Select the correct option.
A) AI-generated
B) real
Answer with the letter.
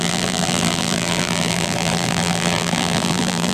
A